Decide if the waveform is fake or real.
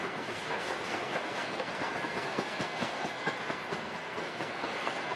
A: fake